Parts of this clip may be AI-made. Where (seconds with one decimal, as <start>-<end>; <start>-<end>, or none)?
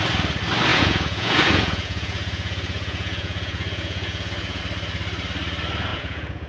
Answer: 0.7-4.6; 5.9-6.5